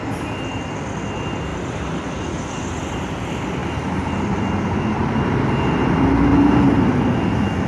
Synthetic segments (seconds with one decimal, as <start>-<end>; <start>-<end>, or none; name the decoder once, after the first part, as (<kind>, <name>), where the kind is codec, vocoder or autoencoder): 1.5-2.5 (vocoder, BigVGAN v2); 6.3-6.9